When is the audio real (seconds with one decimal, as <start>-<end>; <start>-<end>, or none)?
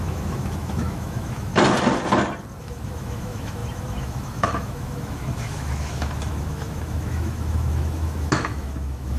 1.5-2.6